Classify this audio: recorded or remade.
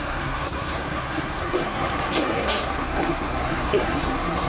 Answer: remade